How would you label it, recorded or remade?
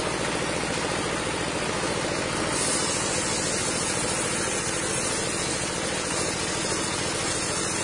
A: recorded